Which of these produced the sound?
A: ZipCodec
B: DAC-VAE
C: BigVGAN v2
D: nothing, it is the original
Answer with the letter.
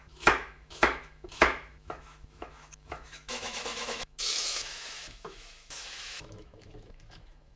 B